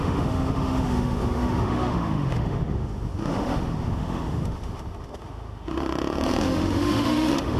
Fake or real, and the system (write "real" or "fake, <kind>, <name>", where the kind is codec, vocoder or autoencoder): fake, autoencoder, DAC-VAE